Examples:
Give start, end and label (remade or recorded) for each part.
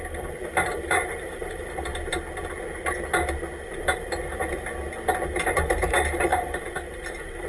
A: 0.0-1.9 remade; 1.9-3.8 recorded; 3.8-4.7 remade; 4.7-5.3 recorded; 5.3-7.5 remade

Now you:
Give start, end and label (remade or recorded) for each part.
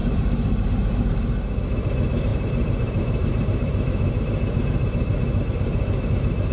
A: 0.0-1.1 remade; 1.1-2.3 recorded; 2.3-6.0 remade; 6.0-6.5 recorded